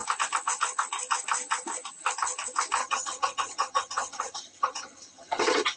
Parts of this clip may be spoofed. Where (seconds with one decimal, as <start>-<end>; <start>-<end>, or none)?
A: 2.8-5.8